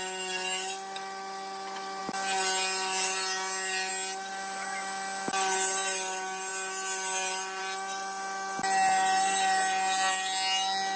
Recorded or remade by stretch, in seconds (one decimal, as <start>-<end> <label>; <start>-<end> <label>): 0.0-11.0 recorded